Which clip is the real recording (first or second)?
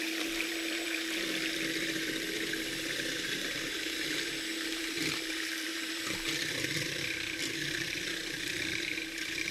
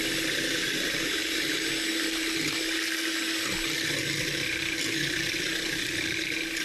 second